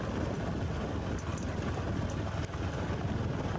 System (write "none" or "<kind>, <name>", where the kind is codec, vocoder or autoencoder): none